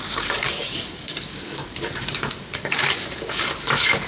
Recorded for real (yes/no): no